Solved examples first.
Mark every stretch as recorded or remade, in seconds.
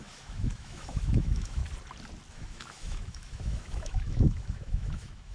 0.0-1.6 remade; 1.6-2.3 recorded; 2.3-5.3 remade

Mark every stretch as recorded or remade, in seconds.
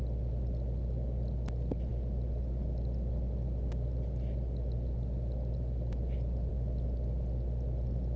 0.0-8.2 recorded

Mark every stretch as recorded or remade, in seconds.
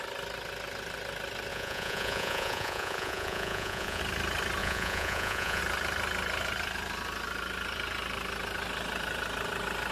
0.0-1.5 recorded; 1.5-4.0 remade; 4.0-4.6 recorded; 4.6-5.6 remade; 5.6-9.9 recorded